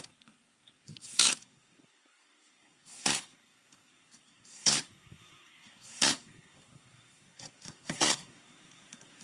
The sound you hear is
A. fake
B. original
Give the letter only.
A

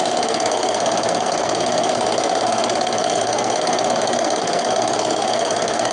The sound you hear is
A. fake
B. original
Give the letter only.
A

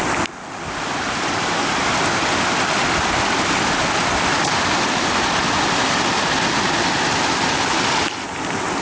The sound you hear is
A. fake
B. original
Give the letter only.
B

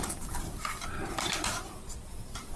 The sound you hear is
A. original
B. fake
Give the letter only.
A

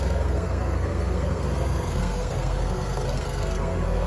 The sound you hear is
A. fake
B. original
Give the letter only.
A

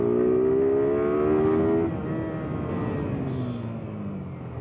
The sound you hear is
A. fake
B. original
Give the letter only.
B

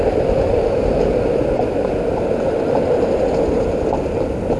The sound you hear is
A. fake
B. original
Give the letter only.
B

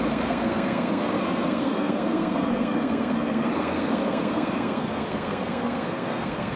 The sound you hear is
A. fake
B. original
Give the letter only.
A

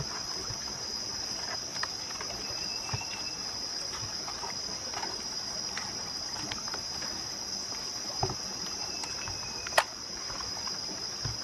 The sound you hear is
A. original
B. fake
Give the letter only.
A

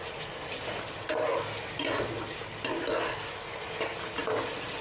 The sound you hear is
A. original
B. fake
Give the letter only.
A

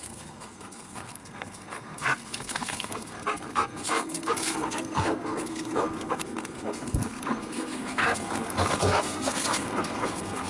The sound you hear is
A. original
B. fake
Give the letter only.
B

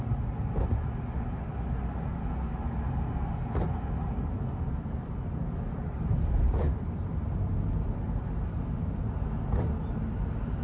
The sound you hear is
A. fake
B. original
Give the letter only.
B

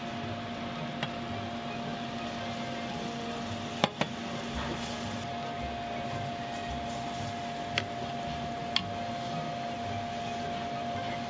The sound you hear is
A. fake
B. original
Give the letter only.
B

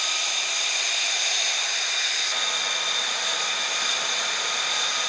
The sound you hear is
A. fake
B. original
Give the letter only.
B